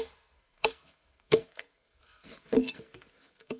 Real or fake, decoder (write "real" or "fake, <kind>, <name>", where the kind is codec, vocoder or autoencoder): fake, codec, SNAC